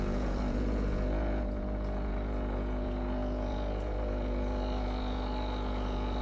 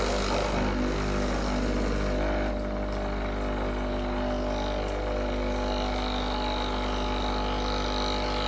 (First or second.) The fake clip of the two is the first